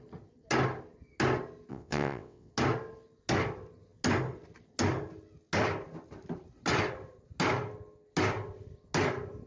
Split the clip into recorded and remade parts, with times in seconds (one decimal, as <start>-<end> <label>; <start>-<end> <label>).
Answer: 0.0-1.7 recorded; 1.7-2.5 remade; 2.5-9.5 recorded